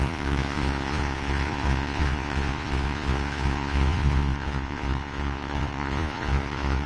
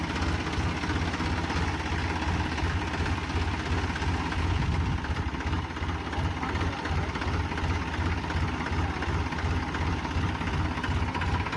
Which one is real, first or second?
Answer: second